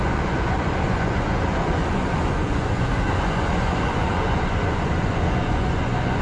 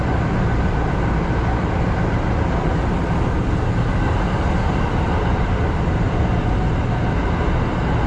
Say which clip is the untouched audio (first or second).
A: second